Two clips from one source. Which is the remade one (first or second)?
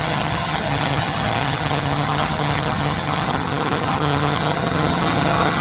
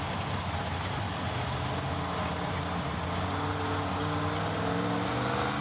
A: first